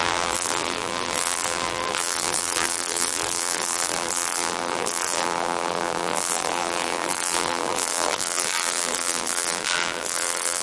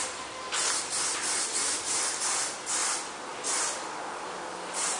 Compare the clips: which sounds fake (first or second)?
first